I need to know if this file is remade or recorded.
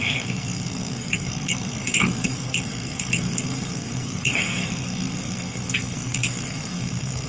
remade